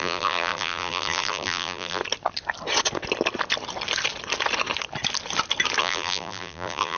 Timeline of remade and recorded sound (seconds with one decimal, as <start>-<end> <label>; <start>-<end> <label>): 0.0-2.0 remade; 2.0-5.8 recorded; 5.8-7.0 remade

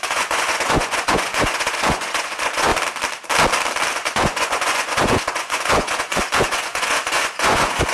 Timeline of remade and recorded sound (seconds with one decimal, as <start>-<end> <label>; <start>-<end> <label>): 0.0-2.7 remade; 2.7-3.9 recorded; 3.9-7.9 remade

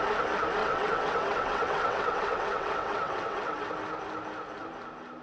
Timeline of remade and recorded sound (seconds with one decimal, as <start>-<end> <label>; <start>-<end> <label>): 0.0-0.6 recorded; 0.6-3.7 remade; 3.7-5.2 recorded